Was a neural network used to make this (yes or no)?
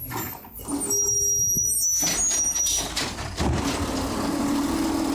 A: no